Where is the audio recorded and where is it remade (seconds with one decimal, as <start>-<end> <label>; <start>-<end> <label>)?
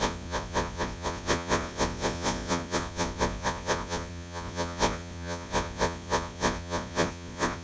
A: 0.0-7.6 remade